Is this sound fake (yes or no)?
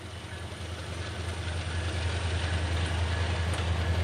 no